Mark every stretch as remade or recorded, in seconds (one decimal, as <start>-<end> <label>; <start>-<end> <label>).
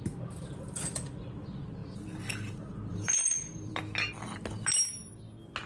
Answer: 0.0-2.9 recorded; 2.9-3.7 remade; 3.7-5.7 recorded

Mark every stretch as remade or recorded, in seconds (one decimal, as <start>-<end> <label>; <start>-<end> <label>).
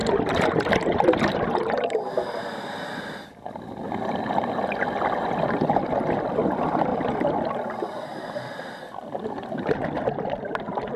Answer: 0.0-11.0 recorded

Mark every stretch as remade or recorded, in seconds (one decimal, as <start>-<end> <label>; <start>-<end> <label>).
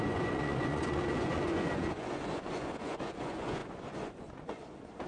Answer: 0.0-5.1 remade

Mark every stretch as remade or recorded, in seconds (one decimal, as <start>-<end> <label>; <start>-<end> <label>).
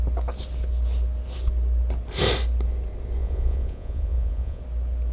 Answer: 0.0-3.2 recorded; 3.2-4.6 remade; 4.6-5.1 recorded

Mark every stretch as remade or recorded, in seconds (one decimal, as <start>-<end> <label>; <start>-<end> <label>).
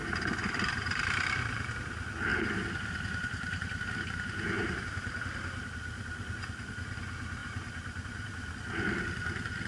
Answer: 0.0-1.7 remade; 1.7-2.3 recorded; 2.3-5.6 remade; 5.6-7.4 recorded; 7.4-8.5 remade; 8.5-9.7 recorded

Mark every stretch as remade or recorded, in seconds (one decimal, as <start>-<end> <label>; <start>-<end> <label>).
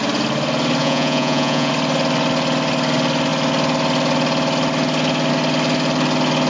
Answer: 0.0-0.8 recorded; 0.8-1.7 remade; 1.7-6.5 recorded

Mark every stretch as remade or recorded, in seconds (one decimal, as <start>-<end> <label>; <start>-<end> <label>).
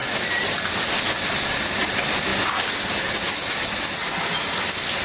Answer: 0.0-5.0 recorded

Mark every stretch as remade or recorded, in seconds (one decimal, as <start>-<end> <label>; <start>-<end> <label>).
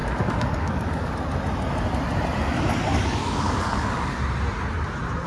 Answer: 0.0-1.1 remade; 1.1-2.9 recorded; 2.9-4.2 remade; 4.2-5.3 recorded